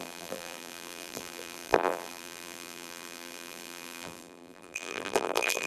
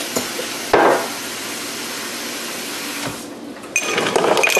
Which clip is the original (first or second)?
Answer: second